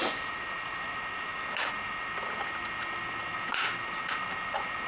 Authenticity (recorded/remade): recorded